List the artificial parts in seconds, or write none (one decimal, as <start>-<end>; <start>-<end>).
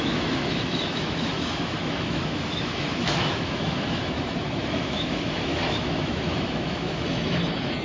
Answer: 0.0-7.8